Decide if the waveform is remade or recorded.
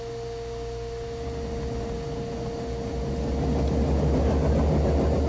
recorded